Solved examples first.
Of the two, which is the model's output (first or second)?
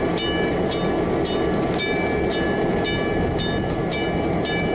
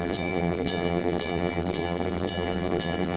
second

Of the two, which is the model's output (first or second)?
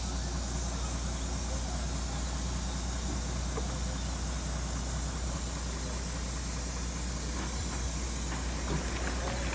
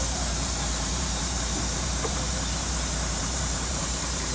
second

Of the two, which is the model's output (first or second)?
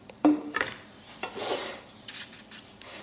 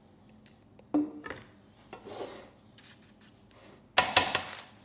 first